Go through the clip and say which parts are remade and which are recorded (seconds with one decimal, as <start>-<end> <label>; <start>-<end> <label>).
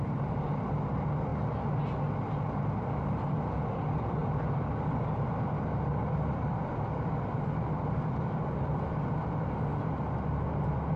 0.0-4.2 recorded; 4.2-8.9 remade; 8.9-11.0 recorded